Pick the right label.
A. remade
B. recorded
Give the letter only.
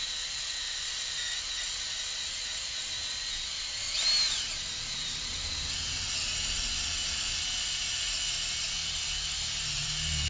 B